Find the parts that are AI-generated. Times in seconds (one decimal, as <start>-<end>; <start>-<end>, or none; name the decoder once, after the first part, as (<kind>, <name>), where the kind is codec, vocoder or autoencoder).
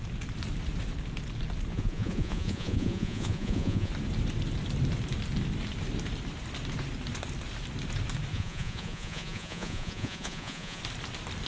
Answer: 1.7-3.9 (vocoder, Vocos); 8.3-10.8